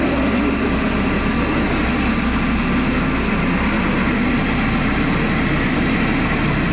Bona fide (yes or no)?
yes